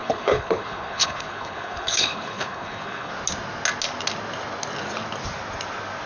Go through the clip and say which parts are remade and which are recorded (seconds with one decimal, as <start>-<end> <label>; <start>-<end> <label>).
0.0-3.1 remade; 3.1-6.1 recorded